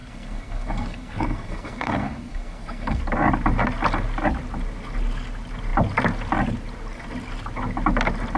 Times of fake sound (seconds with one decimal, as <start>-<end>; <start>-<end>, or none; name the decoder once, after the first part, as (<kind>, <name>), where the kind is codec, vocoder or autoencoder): 0.0-3.0 (codec, SNAC)